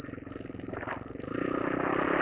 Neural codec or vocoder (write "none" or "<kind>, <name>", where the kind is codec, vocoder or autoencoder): none